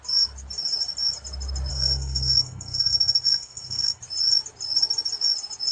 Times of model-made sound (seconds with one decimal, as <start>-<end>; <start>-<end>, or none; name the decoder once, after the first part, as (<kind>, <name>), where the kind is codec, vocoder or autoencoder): 1.7-4.0 (codec, SNAC)